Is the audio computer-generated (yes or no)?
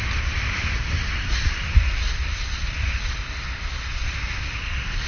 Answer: no